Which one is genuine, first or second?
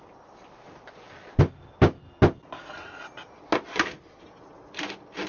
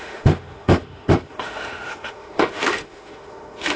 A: first